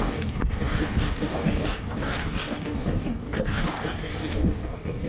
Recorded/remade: remade